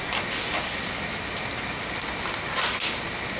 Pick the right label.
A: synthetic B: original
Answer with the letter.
B